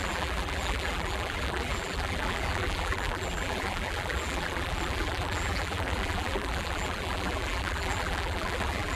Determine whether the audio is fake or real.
fake